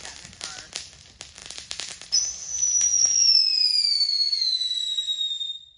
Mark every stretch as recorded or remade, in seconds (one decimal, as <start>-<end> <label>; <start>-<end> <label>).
0.0-5.8 recorded